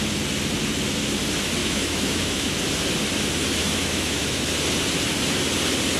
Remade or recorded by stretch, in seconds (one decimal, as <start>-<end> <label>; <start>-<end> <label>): 0.0-1.6 recorded; 1.6-2.5 remade; 2.5-3.6 recorded; 3.6-4.5 remade; 4.5-6.0 recorded